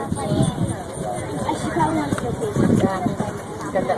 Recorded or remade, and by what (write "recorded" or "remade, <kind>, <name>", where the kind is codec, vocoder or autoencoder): remade, vocoder, BigVGAN v2